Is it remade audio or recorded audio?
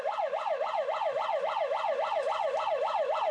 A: recorded